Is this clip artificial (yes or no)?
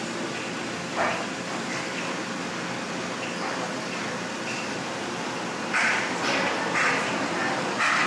no